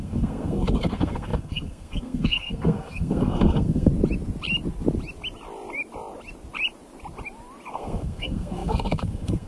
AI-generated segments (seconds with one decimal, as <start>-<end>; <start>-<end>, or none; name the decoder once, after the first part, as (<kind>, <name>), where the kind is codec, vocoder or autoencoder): 0.0-3.9 (codec, SNAC); 7.7-9.5